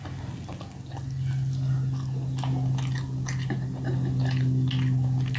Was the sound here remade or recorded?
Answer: recorded